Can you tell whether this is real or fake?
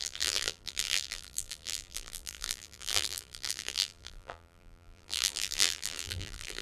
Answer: fake